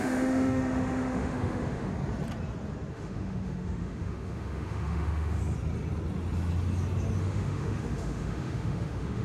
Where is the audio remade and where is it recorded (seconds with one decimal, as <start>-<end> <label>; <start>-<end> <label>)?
0.0-1.9 remade; 1.9-2.9 recorded; 2.9-5.4 remade; 5.4-7.2 recorded; 7.2-9.2 remade